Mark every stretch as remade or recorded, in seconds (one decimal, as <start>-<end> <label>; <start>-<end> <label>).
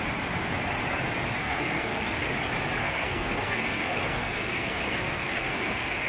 0.0-1.4 recorded; 1.4-2.3 remade; 2.3-2.8 recorded; 2.8-6.1 remade